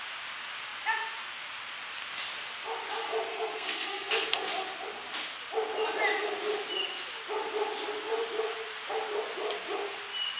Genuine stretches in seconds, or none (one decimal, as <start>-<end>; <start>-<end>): 0.0-3.3; 4.5-10.4